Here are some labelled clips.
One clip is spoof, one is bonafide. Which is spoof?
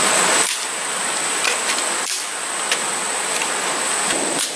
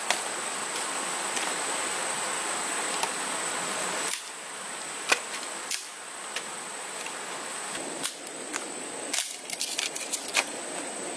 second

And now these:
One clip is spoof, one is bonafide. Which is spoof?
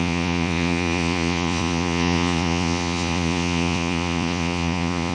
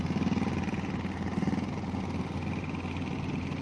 first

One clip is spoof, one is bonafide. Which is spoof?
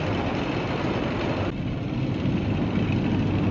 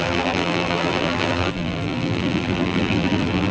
second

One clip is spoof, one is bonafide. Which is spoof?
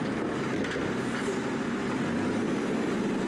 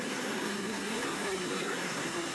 second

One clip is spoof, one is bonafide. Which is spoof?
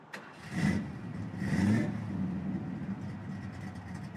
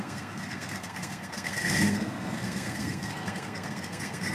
second